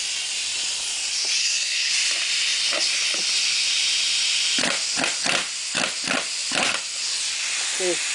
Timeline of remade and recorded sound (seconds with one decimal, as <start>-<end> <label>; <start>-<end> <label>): 0.0-1.4 recorded; 1.4-1.9 remade; 1.9-8.1 recorded